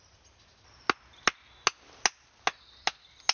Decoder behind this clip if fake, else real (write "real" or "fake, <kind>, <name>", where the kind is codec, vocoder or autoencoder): real